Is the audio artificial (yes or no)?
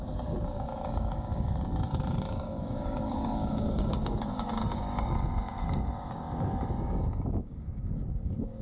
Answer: yes